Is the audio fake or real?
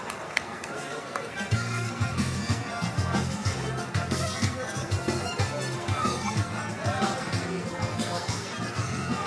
fake